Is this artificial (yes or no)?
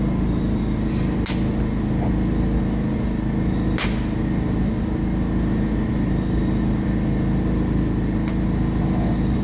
no